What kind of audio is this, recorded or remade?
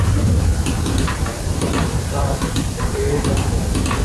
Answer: remade